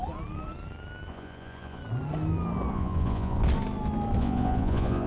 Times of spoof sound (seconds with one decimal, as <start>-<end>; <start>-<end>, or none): 1.1-1.8; 2.7-3.4; 4.2-5.1